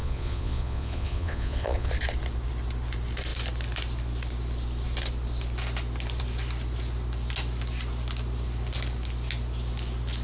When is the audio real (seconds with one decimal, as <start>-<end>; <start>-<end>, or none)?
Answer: 1.9-10.2